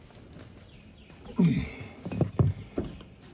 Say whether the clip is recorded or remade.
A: recorded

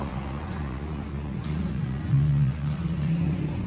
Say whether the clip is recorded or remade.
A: remade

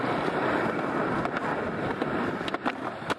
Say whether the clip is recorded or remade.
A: recorded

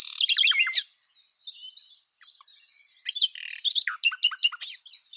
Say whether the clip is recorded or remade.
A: recorded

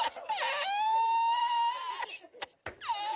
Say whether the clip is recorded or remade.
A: recorded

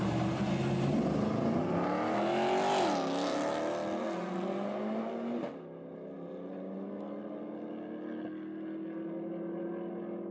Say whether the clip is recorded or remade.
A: recorded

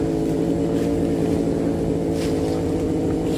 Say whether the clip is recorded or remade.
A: recorded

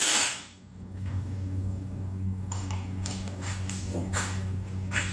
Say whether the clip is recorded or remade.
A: remade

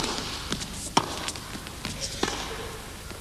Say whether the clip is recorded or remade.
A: recorded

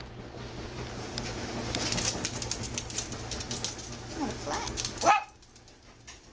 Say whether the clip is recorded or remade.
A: recorded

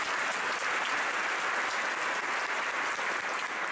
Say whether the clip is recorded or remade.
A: recorded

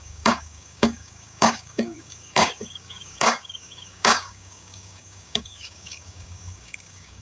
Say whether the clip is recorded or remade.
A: remade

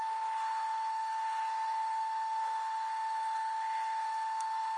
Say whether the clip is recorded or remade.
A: remade